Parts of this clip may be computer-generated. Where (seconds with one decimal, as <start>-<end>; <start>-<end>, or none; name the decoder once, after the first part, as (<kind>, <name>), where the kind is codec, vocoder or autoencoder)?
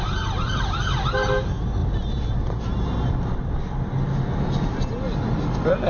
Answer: 1.8-3.1 (vocoder, BigVGAN v2)